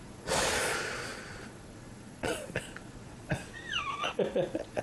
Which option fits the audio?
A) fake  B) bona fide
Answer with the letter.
A